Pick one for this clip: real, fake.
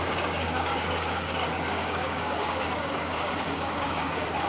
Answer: fake